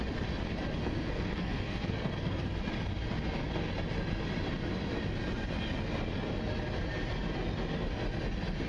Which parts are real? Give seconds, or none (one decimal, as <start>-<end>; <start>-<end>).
0.0-0.8; 2.4-8.7

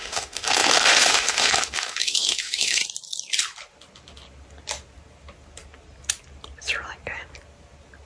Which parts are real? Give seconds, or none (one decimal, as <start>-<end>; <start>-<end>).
2.8-8.1

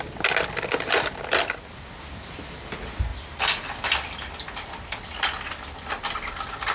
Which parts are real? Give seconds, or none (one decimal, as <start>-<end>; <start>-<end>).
0.0-6.7

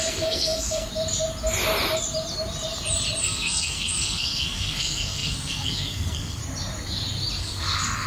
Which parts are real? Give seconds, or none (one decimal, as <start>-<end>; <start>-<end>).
0.9-3.2; 6.4-7.4

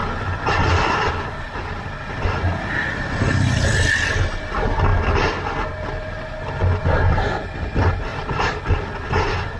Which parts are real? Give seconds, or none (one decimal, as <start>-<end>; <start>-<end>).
4.4-8.1; 8.8-9.6

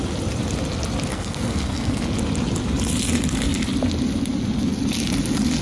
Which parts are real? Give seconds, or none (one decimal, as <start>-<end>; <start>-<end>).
0.0-1.1; 2.0-5.6